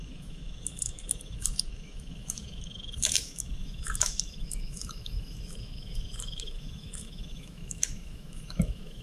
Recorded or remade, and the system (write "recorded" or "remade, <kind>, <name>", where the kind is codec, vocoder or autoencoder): remade, autoencoder, DAC-VAE